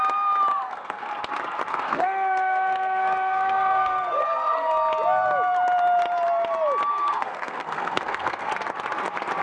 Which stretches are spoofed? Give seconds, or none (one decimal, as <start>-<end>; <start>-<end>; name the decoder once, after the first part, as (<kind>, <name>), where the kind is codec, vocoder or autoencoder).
0.5-1.1 (codec, SNAC); 1.7-4.7; 6.9-8.5